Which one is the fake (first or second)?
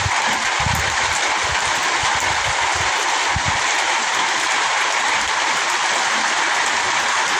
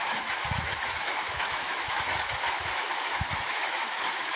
second